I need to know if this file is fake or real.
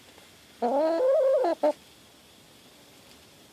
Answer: real